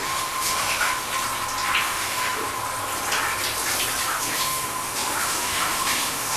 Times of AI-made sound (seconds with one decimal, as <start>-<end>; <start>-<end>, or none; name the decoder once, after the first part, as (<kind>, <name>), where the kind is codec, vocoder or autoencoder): 0.0-1.1 (autoencoder, DAC-VAE); 1.8-2.4; 4.2-6.4